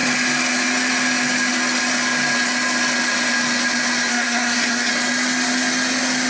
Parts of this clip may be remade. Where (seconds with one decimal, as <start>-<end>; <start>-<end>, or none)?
4.1-4.9